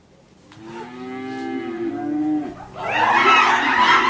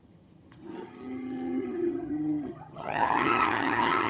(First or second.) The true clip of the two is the first